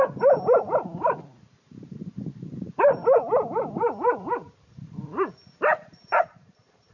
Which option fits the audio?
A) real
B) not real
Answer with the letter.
B